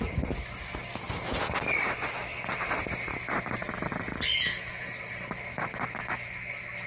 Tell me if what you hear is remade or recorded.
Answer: recorded